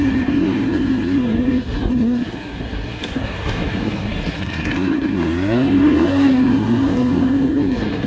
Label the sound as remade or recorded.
remade